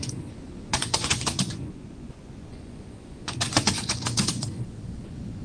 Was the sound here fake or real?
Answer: fake